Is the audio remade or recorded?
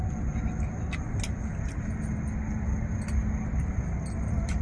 recorded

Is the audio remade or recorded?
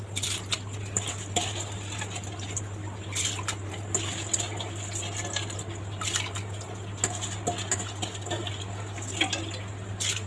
recorded